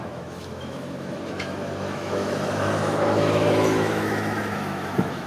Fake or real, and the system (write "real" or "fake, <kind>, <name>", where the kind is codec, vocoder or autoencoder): fake, autoencoder, DAC-VAE